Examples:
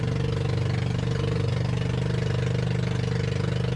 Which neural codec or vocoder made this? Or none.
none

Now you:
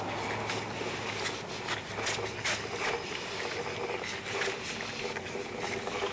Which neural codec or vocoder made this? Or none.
none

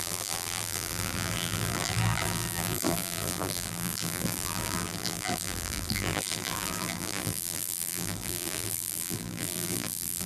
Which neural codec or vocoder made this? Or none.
vocoder, BigVGAN v2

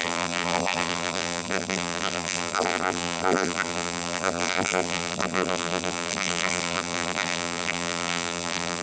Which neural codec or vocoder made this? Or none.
vocoder, BigVGAN v2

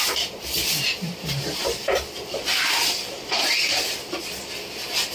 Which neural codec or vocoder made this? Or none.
none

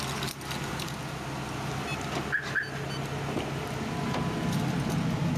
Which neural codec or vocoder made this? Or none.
none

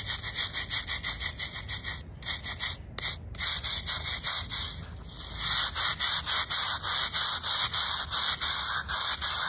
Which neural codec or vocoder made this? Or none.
none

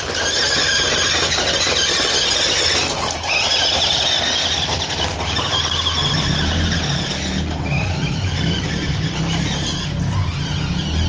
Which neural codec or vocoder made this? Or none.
none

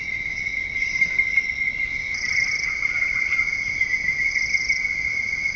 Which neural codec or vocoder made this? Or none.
none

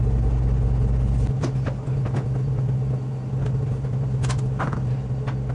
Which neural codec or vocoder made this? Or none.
none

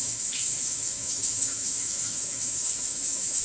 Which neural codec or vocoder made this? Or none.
autoencoder, DAC-VAE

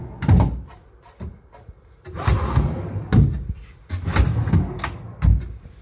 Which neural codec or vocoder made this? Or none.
none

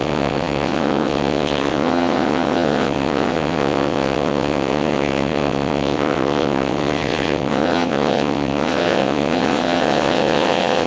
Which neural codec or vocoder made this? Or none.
vocoder, WaveNeXt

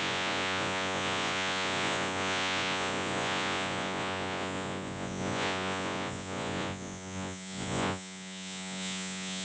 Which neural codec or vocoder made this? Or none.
vocoder, Vocos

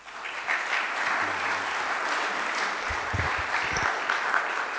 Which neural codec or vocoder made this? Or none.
none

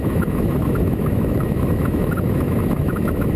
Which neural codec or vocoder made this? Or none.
autoencoder, DAC-VAE